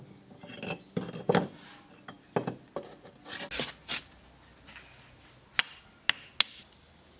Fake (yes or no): no